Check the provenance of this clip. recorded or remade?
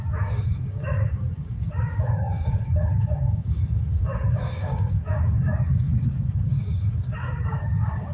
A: remade